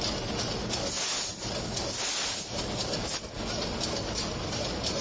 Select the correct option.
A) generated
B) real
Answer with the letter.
B